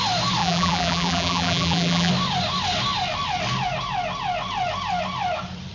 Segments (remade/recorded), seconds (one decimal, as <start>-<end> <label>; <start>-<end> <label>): 0.0-0.4 recorded; 0.4-2.1 remade; 2.1-5.7 recorded